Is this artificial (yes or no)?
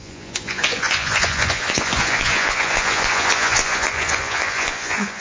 yes